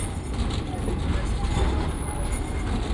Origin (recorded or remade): recorded